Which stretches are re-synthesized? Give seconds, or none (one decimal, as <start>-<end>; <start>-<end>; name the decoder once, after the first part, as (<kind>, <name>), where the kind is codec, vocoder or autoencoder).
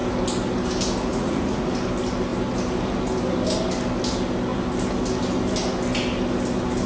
1.1-1.7 (vocoder, Vocos)